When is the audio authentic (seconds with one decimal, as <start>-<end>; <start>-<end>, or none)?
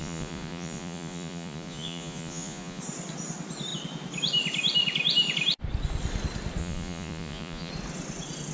2.8-6.6; 7.7-8.5